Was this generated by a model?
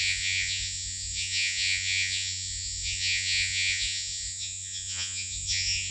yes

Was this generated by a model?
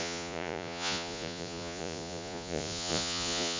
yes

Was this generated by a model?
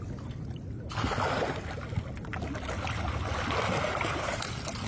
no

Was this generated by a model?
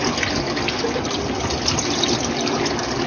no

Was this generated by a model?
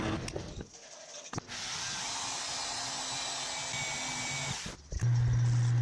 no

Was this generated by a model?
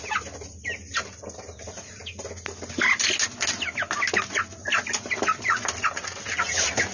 no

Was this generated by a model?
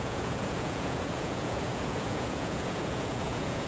yes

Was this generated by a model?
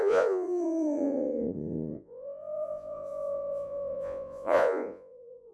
yes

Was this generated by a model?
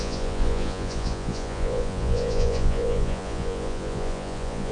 yes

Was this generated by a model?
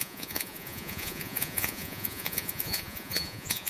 yes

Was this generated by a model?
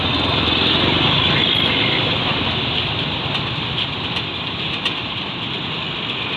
no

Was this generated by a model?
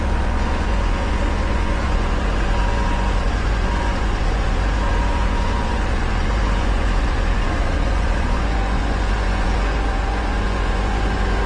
yes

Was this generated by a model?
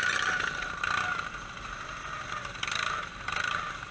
no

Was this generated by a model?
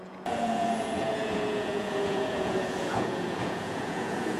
yes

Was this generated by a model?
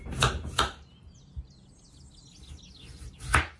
no